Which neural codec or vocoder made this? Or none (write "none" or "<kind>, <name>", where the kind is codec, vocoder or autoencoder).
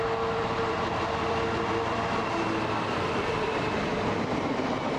vocoder, BigVGAN v2